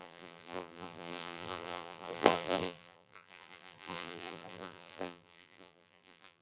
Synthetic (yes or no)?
yes